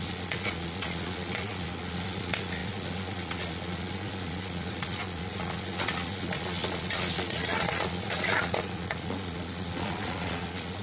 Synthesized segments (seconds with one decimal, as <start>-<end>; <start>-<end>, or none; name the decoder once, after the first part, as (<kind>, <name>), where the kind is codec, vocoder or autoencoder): 0.0-10.8 (vocoder, Vocos)

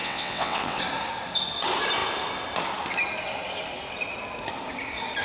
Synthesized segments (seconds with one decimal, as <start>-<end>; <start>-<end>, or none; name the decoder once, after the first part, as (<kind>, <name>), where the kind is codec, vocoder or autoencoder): 0.0-0.8 (vocoder, WaveNeXt)

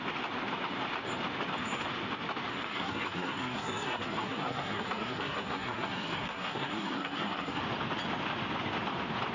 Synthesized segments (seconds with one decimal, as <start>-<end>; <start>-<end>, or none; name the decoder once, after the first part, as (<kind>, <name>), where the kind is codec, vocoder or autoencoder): 2.5-7.6 (codec, SNAC)